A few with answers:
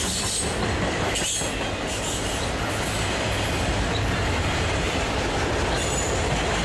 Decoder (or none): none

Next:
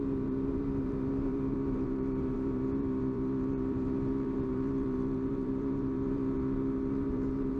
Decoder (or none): vocoder, BigVGAN v2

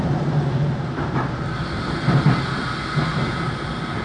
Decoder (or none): none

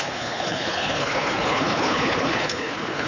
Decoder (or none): codec, HILCodec